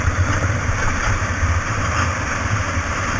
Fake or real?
fake